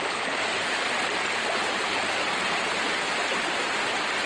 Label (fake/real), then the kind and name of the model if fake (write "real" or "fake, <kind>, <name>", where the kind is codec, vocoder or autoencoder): real